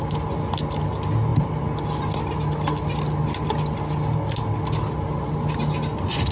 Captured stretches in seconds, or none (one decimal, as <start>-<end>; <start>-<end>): 0.0-6.3